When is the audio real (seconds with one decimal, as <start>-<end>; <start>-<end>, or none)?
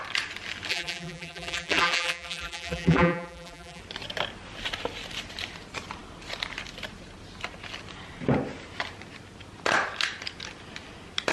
0.0-0.7; 3.8-11.3